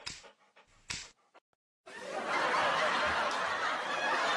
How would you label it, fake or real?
real